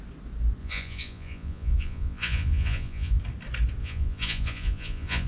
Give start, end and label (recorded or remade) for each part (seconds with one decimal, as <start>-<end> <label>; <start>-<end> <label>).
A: 0.0-0.6 recorded; 0.6-3.2 remade; 3.2-3.8 recorded; 3.8-5.3 remade